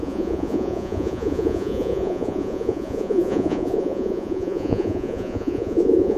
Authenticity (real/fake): fake